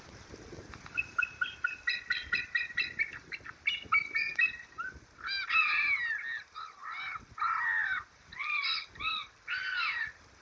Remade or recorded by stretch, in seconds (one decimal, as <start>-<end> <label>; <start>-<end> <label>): 0.0-10.4 recorded